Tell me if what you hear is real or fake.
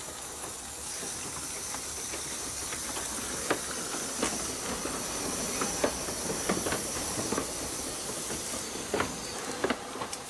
real